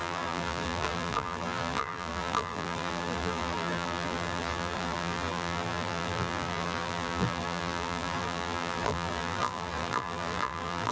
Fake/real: fake